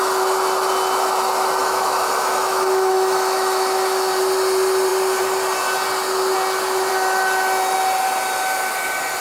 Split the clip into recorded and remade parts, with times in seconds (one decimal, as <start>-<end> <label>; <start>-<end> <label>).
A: 0.0-1.6 recorded; 1.6-4.1 remade; 4.1-9.2 recorded